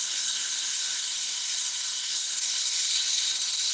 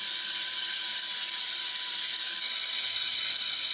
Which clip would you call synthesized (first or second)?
first